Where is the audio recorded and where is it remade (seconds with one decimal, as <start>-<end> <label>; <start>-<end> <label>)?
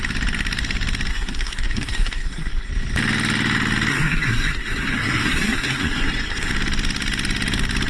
0.0-1.1 recorded; 1.1-2.7 remade; 2.7-3.9 recorded; 3.9-6.5 remade; 6.5-7.9 recorded